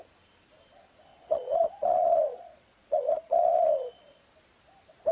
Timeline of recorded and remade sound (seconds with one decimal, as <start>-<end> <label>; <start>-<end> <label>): 0.0-1.1 recorded; 1.1-4.2 remade; 4.2-5.1 recorded